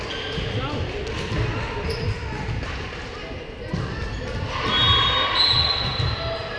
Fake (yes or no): no